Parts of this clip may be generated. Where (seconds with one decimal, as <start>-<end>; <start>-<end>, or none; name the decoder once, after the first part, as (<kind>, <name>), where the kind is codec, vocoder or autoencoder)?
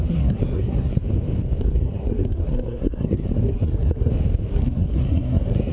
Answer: 0.0-1.0 (codec, SNAC); 1.6-4.1; 4.5-5.7